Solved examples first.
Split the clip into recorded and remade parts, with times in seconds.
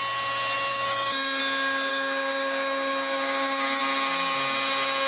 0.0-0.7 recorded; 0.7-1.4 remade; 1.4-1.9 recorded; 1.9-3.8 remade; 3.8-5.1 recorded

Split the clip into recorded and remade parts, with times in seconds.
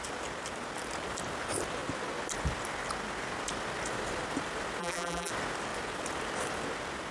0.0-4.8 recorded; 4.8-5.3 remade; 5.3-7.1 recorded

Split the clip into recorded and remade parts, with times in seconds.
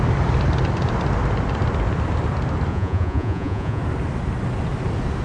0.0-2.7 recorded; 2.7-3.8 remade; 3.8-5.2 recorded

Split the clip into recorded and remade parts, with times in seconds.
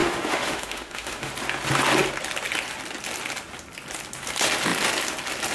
0.0-1.3 remade; 1.3-5.5 recorded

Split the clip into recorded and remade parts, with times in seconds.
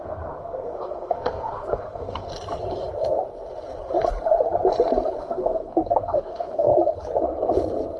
0.0-2.3 remade; 2.3-5.2 recorded; 5.2-6.7 remade; 6.7-8.0 recorded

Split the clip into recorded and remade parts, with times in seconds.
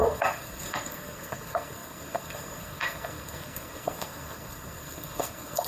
0.0-5.7 remade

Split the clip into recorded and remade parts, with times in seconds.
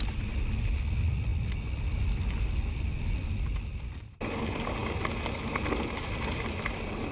0.0-7.1 recorded